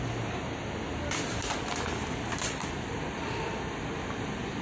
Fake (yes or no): no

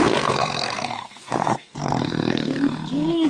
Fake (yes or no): yes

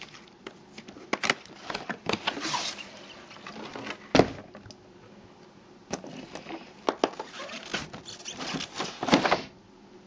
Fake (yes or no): no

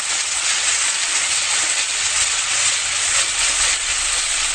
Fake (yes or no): yes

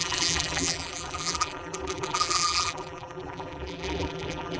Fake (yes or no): yes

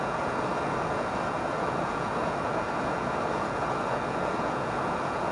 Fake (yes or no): yes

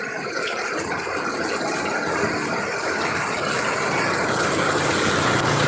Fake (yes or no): no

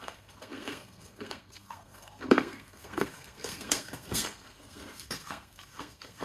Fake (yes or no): yes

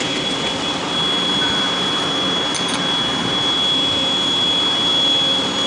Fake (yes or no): no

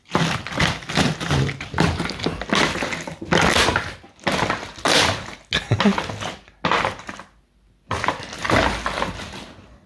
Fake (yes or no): no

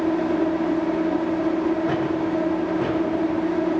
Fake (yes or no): no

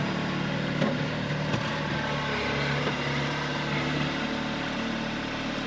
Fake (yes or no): no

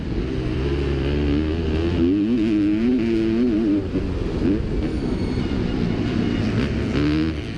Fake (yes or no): no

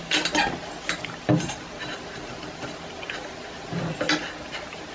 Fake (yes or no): no